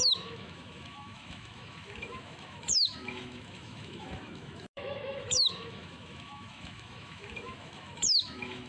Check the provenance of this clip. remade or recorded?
remade